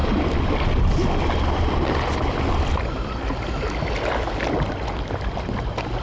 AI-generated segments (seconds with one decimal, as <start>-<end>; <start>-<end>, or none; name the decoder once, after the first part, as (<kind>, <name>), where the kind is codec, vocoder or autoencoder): none